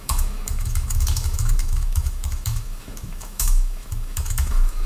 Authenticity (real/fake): fake